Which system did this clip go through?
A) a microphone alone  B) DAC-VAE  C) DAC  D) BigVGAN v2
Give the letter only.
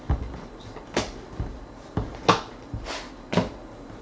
A